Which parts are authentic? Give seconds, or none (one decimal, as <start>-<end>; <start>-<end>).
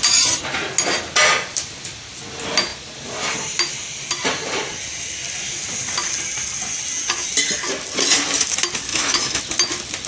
0.0-8.9; 9.4-10.1